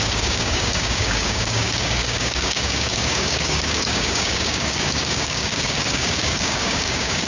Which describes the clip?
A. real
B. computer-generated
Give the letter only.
B